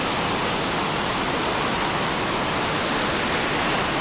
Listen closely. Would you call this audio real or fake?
real